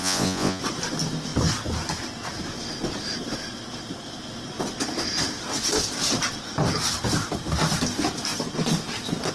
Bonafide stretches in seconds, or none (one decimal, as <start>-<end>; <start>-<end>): 0.6-9.3